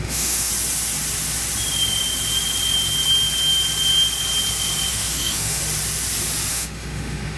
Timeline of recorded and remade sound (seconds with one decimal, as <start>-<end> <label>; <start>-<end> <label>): 0.0-0.5 remade; 0.5-4.9 recorded; 4.9-5.6 remade; 5.6-6.5 recorded; 6.5-7.4 remade